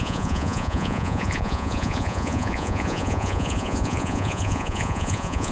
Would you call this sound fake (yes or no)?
yes